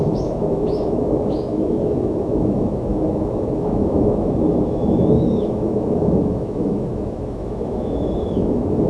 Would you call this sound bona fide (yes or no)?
no